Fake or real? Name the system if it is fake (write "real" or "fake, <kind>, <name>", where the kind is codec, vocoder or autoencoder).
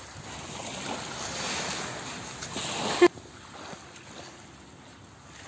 real